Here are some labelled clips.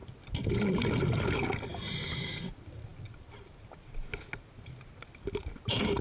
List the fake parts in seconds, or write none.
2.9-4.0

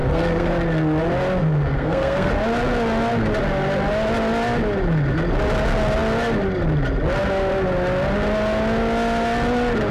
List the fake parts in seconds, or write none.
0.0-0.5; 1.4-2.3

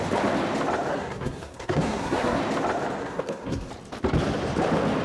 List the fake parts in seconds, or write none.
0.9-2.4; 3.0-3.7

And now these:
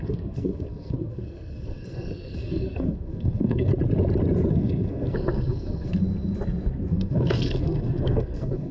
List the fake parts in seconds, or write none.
0.0-3.7; 4.5-5.9; 6.9-8.7